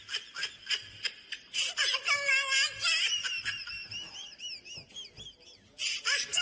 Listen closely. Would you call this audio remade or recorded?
recorded